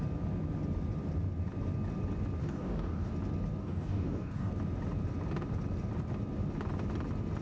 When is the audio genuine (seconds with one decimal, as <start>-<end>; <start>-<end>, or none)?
0.0-2.4; 3.1-3.6; 4.5-7.4